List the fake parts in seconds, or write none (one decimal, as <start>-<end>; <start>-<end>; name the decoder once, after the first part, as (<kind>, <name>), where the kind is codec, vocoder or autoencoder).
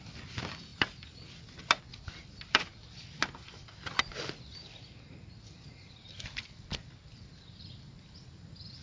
none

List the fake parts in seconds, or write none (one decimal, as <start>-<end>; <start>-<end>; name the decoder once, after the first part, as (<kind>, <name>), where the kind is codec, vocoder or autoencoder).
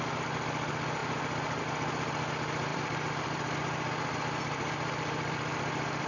2.7-6.1 (vocoder, BigVGAN v2)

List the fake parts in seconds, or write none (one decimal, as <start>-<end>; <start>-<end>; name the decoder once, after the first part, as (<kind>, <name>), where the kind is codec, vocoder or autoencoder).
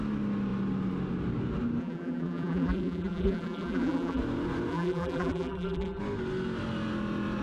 1.8-4.2 (vocoder, BigVGAN v2); 4.7-6.0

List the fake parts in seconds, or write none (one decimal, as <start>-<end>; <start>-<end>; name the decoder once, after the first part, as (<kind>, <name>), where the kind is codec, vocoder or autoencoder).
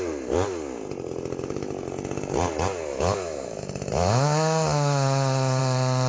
2.9-5.6 (autoencoder, DAC-VAE)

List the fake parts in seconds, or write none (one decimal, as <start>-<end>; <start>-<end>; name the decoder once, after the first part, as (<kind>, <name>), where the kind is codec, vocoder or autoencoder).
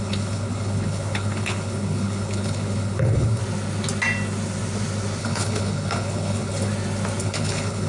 0.0-3.4 (codec, HILCodec); 5.2-6.7; 7.2-7.9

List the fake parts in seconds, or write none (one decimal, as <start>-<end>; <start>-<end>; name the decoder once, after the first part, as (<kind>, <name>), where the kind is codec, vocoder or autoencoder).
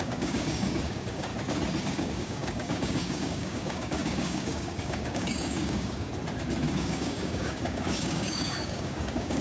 0.0-1.3 (codec, DAC); 1.8-6.1; 6.7-9.4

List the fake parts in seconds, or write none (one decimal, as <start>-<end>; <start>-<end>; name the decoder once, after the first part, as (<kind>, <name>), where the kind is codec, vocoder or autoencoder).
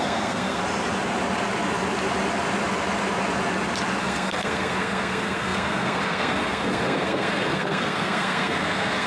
0.0-0.6 (codec, SNAC); 4.0-9.1